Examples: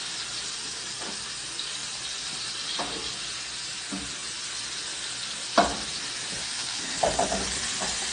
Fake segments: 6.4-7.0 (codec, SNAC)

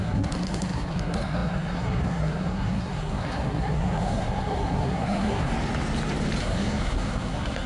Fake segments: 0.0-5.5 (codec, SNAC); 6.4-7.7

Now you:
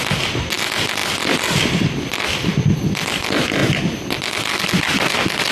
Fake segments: none

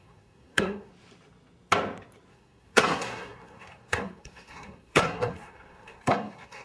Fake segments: 0.0-0.9 (codec, SNAC); 2.3-6.6